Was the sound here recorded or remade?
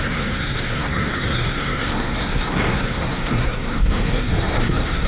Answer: remade